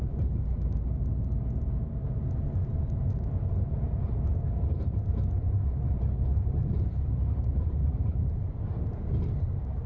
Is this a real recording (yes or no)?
no